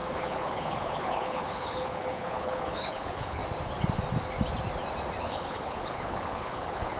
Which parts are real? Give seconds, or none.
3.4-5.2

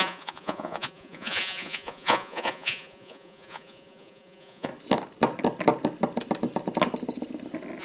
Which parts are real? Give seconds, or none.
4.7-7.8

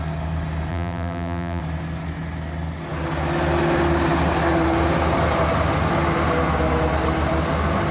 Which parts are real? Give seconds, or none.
0.0-0.7; 1.6-7.9

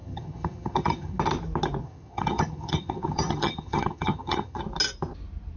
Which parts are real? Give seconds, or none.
1.2-1.8; 4.6-5.6

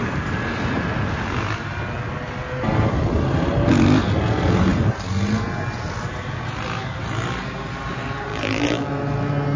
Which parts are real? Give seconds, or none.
0.0-8.3; 8.9-9.6

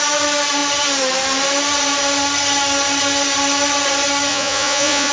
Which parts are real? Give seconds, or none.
0.0-4.3